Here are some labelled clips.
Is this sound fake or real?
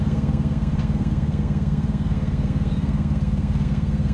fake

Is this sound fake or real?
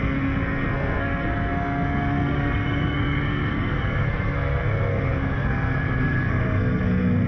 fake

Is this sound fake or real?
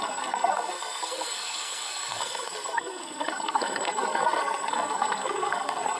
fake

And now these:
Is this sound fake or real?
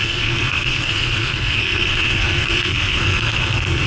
fake